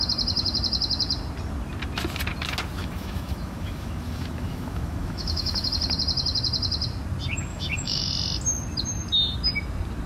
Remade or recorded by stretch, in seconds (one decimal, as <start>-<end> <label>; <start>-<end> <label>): 0.0-2.8 recorded; 2.8-5.7 remade; 5.7-7.5 recorded; 7.5-8.1 remade; 8.1-10.1 recorded